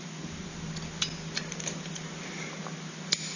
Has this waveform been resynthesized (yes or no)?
no